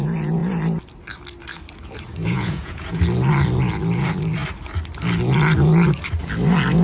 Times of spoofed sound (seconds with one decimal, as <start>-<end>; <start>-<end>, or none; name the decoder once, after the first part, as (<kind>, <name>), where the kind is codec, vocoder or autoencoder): 2.2-3.0 (vocoder, Vocos)